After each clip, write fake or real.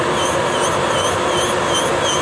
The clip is real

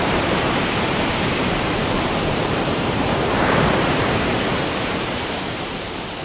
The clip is fake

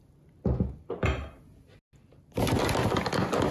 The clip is real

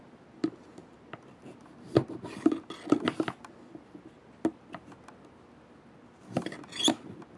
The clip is real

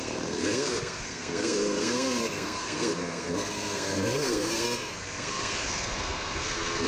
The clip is fake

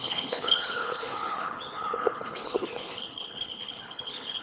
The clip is fake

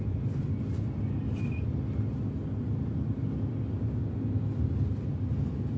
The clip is real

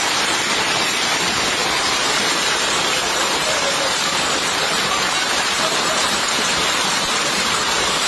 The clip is fake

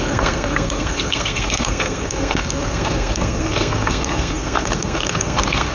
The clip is fake